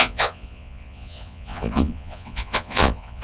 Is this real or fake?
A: fake